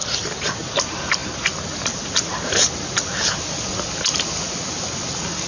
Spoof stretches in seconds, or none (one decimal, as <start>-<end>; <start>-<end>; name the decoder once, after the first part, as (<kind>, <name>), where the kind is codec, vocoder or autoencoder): 0.0-0.5 (vocoder, BigVGAN v2)